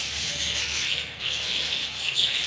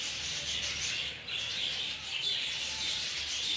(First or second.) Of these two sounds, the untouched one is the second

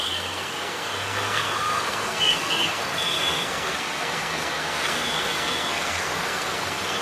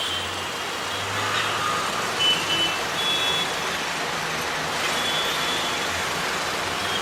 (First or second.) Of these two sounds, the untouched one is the second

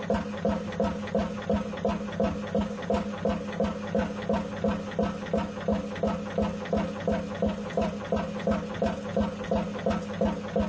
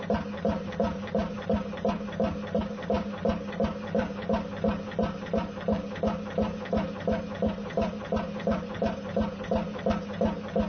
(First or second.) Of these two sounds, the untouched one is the first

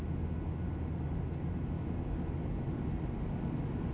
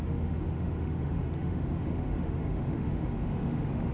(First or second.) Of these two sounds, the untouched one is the first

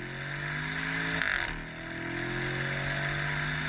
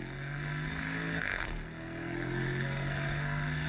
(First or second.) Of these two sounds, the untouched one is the first